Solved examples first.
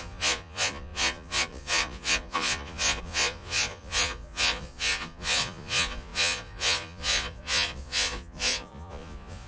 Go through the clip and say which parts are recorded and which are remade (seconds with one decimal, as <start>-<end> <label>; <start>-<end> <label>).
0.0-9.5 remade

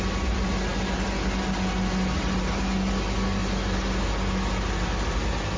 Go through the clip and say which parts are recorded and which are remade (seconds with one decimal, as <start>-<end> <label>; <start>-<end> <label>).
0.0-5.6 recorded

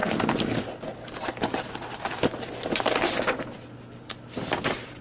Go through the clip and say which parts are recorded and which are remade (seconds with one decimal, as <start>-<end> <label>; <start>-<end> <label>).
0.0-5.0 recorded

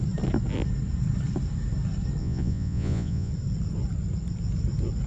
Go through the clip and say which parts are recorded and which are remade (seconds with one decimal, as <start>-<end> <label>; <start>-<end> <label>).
0.0-2.2 recorded; 2.2-3.3 remade; 3.3-5.1 recorded

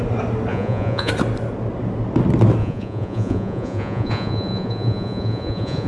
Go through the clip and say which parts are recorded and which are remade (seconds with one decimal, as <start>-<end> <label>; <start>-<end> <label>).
0.0-0.5 recorded; 0.5-1.1 remade; 1.1-2.6 recorded; 2.6-5.9 remade